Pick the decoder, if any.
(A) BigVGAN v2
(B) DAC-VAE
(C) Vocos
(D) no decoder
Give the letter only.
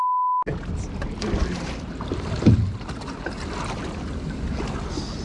D